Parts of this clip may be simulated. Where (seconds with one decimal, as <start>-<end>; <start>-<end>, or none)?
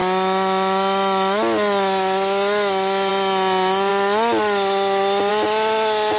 none